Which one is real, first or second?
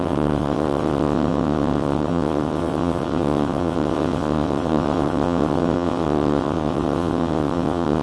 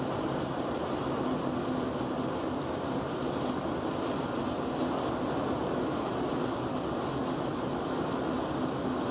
second